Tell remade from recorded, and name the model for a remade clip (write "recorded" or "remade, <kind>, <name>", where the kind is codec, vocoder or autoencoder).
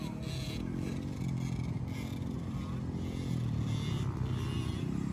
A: recorded